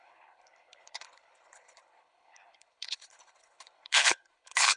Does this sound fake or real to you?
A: fake